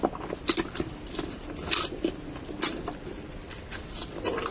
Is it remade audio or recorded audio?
recorded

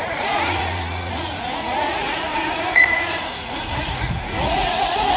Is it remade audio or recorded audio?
remade